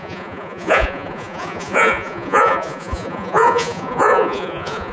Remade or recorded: remade